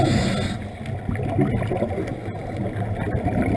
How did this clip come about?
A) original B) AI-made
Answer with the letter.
A